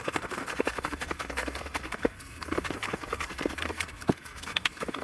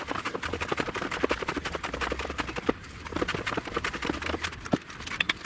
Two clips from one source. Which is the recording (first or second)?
second